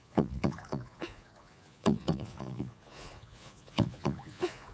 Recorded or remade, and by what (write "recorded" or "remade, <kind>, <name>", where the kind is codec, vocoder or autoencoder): remade, vocoder, Vocos